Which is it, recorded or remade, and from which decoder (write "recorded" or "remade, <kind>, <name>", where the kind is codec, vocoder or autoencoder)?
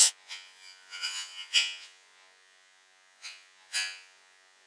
remade, vocoder, Vocos